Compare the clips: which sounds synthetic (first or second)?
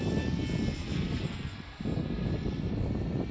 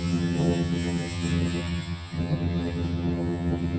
second